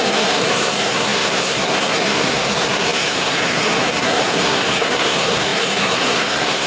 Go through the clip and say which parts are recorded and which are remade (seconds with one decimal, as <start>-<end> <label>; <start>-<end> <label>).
0.0-6.7 remade